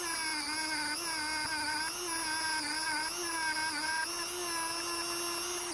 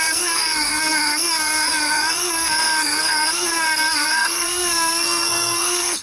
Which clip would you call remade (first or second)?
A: second